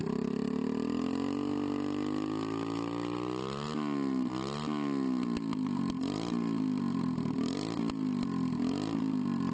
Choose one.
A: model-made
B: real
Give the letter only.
B